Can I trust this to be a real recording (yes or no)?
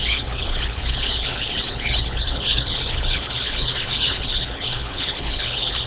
no